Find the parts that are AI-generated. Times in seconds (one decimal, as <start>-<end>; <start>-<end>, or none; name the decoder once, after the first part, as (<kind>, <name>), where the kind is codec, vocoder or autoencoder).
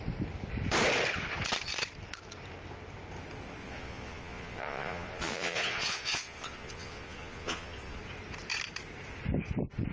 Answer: 3.6-8.0 (vocoder, Vocos)